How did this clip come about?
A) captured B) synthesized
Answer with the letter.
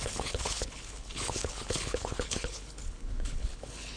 B